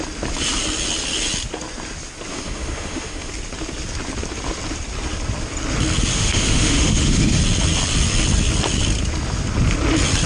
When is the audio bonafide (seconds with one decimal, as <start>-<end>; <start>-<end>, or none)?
0.0-2.3; 3.3-6.1; 7.4-10.3